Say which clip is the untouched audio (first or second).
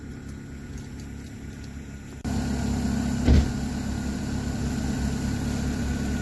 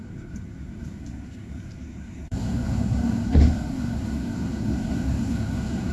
first